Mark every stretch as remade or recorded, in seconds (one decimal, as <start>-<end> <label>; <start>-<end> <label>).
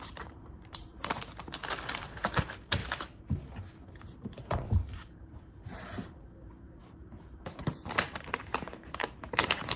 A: 0.0-2.8 remade; 2.8-3.9 recorded; 3.9-9.8 remade